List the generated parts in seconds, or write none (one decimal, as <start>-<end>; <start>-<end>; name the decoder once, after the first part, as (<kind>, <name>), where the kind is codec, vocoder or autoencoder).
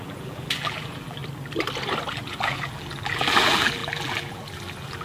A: 0.0-1.2 (vocoder, BigVGAN v2); 2.1-5.0